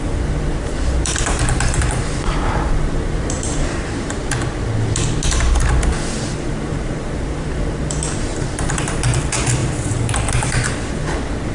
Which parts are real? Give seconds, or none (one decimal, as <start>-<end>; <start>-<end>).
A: 0.0-0.5; 4.2-6.3; 7.8-8.3; 9.2-9.6; 10.1-11.5